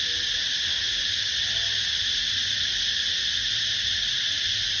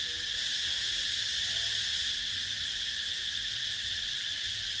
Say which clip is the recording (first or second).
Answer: first